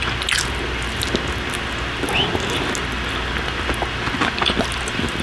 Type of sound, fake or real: real